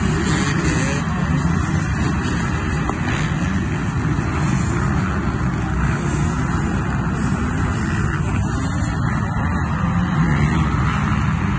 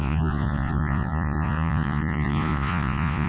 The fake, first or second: second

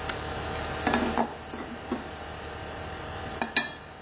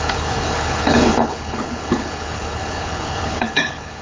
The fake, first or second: second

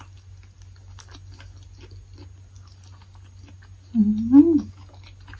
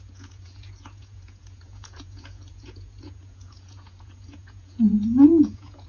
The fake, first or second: second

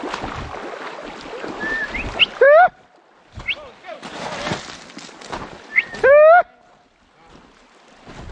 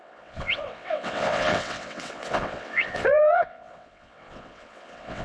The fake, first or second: second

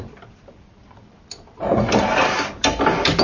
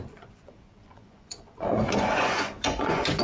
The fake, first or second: second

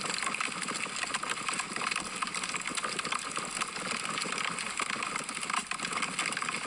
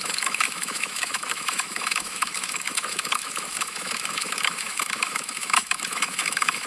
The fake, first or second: second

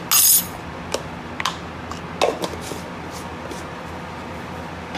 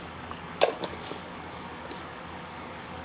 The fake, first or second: second